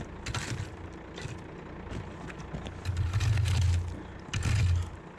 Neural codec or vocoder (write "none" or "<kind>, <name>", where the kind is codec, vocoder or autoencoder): none